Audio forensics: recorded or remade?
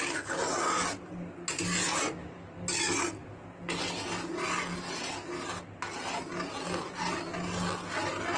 recorded